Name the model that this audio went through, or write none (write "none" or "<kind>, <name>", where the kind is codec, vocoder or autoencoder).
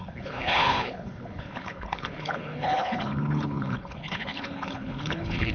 codec, HILCodec